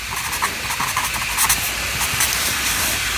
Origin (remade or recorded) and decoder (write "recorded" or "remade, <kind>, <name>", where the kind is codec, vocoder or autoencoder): recorded